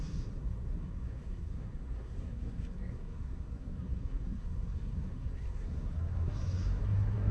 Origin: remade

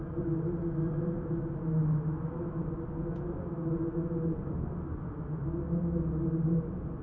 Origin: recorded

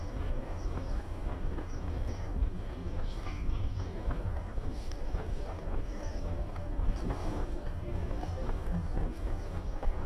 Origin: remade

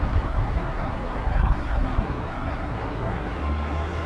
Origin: remade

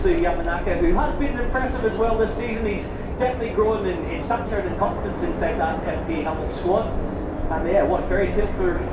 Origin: recorded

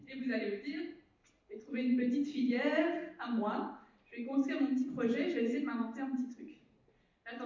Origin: remade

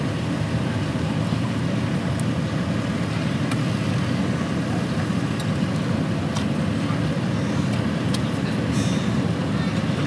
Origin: recorded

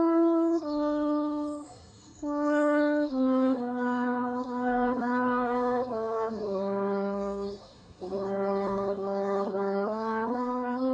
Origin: remade